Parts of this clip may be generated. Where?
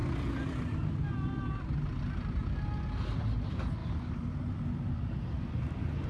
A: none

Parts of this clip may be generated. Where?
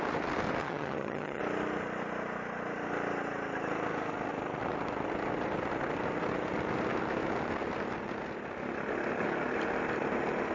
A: 0.6-1.4 (vocoder, HiFi-GAN)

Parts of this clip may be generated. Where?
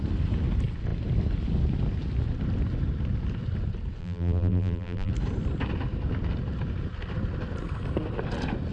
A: 4.0-5.1 (vocoder, BigVGAN v2)